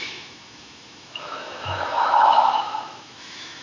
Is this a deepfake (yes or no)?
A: yes